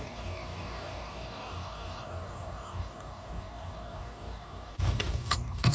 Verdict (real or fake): fake